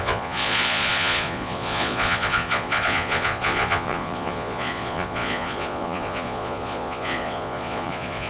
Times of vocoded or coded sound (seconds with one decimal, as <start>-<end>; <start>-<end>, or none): 0.0-8.3